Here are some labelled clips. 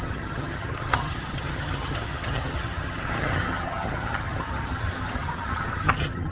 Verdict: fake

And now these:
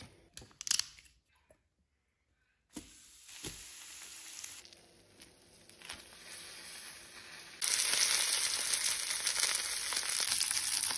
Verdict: real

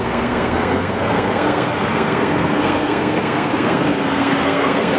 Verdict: fake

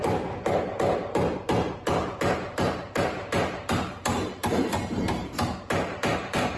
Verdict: fake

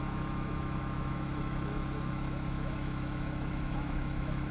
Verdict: fake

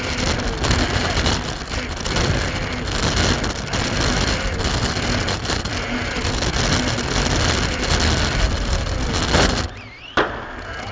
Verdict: real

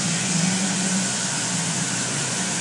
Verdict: fake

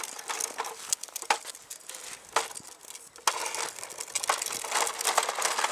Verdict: real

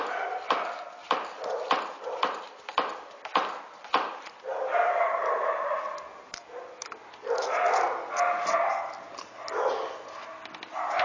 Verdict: real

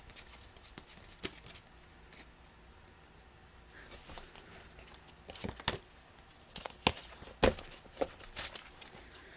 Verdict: real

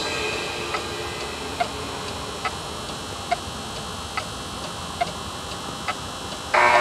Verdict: real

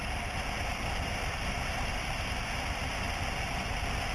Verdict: fake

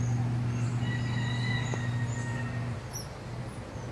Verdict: real